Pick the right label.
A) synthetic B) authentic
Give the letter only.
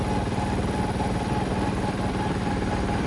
A